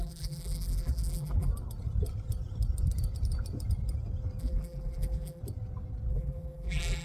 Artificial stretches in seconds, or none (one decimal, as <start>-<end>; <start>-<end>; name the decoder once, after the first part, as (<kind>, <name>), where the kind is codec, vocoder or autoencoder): 0.0-1.5 (vocoder, BigVGAN v2); 4.4-5.4; 6.1-7.0